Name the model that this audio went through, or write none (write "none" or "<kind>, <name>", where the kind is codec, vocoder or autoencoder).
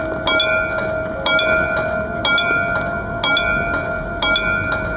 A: none